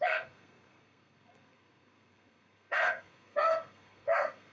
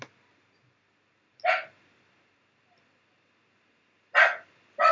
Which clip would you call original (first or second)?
second